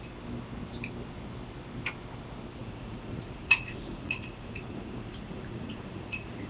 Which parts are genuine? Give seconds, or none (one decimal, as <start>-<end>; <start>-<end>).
0.0-2.6